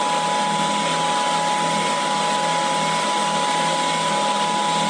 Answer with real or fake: real